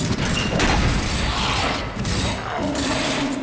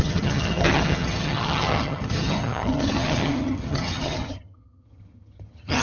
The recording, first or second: first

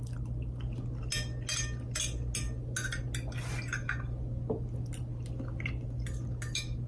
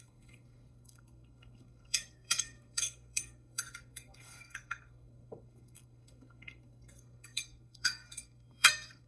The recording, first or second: first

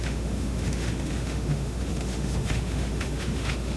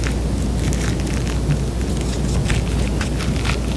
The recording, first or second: second